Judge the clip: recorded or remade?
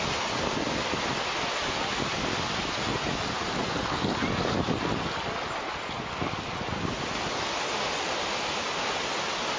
recorded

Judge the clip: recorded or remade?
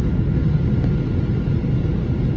recorded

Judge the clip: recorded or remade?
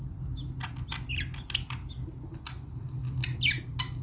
recorded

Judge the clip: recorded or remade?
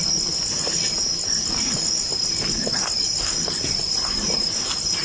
recorded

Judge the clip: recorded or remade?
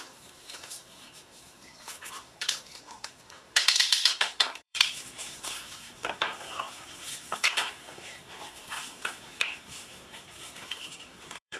remade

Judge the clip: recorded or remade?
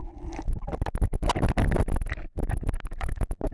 recorded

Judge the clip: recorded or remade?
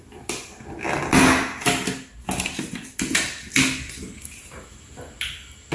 recorded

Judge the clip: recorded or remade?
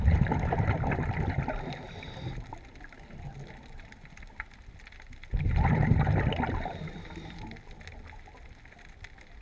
recorded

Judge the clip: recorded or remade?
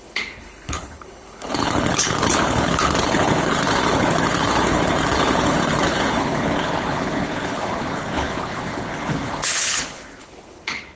remade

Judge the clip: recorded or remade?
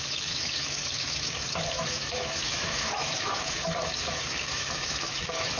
remade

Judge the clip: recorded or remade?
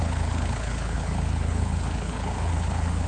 remade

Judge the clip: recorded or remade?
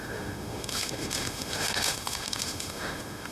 remade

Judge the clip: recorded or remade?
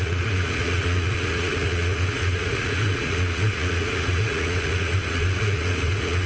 remade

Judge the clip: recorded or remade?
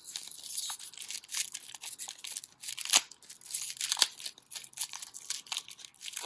recorded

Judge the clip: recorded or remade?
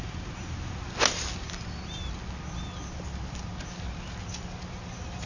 recorded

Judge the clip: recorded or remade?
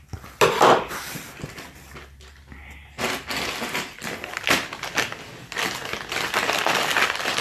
recorded